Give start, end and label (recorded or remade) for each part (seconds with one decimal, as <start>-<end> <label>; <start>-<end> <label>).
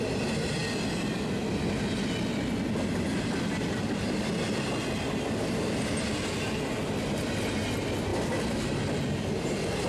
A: 0.0-9.9 recorded